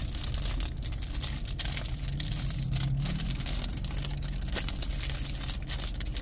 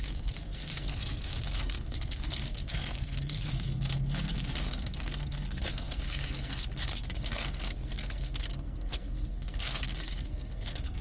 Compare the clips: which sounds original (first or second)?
first